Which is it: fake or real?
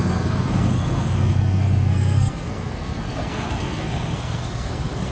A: fake